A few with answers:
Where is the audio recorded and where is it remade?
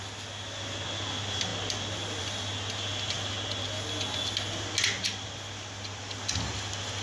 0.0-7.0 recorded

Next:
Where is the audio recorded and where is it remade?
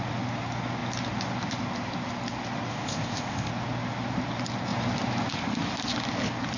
0.0-2.7 recorded; 2.7-3.5 remade; 3.5-6.6 recorded